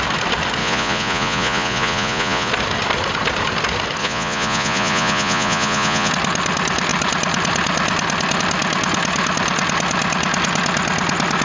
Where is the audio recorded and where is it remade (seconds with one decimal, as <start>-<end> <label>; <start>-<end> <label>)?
0.0-0.6 recorded; 0.6-2.5 remade; 2.5-4.0 recorded; 4.0-6.1 remade; 6.1-11.4 recorded